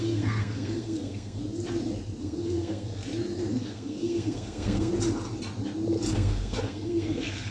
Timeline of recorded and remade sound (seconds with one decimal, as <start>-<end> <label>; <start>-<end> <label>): 0.0-1.4 remade; 1.4-2.2 recorded; 2.2-3.0 remade; 3.0-3.5 recorded; 3.5-4.9 remade; 4.9-6.1 recorded; 6.1-7.5 remade